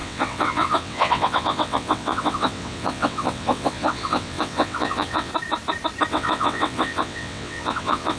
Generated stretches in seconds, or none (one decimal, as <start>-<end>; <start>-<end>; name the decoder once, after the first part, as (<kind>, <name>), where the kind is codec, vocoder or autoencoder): 0.0-5.3 (vocoder, WaveNeXt); 6.1-8.2